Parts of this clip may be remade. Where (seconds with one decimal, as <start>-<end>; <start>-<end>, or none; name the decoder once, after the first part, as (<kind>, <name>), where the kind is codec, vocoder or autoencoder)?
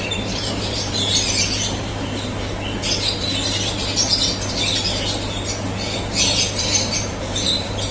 0.0-1.9 (vocoder, BigVGAN v2); 6.6-7.9